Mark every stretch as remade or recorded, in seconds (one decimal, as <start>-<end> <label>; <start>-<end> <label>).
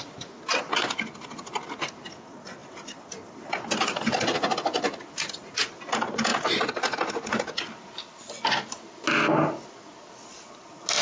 0.0-11.0 recorded